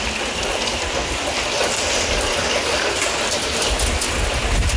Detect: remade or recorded recorded